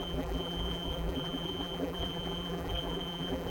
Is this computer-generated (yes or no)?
yes